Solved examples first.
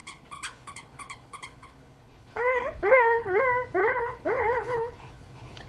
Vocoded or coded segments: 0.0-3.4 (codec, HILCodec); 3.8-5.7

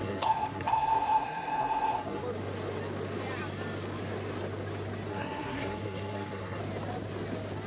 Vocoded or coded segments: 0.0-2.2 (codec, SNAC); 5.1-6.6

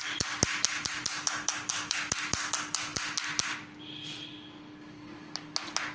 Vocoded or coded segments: none

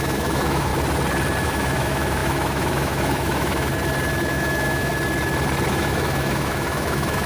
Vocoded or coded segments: 0.0-0.7 (autoencoder, DAC-VAE); 1.4-3.7; 4.3-4.9; 5.7-7.3

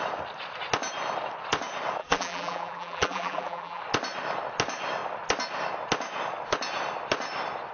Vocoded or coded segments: 2.0-3.8 (vocoder, BigVGAN v2)